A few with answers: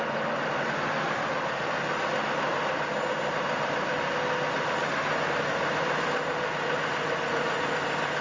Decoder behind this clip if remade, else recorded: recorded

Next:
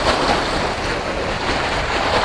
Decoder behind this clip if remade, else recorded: recorded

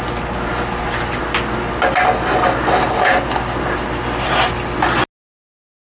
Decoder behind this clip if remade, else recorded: recorded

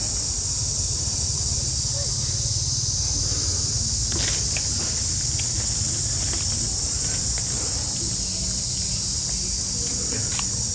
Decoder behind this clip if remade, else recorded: recorded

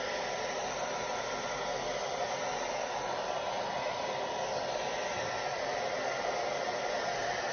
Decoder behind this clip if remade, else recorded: recorded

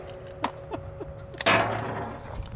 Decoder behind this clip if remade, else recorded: recorded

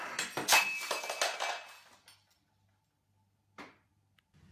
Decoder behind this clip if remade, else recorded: recorded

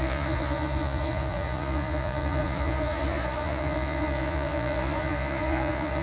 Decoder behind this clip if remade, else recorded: remade, vocoder, Vocos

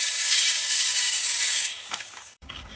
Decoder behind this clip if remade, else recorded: remade, codec, DAC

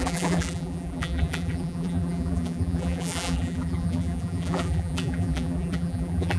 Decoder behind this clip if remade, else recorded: remade, vocoder, BigVGAN v2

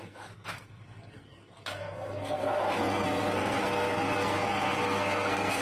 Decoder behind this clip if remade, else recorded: remade, codec, SNAC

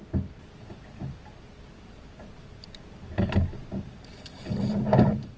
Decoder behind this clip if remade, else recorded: recorded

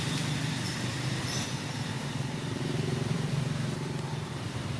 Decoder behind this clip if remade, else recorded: remade, vocoder, BigVGAN v2